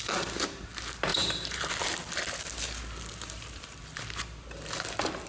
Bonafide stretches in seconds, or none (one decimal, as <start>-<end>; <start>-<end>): 0.0-1.1; 1.7-5.3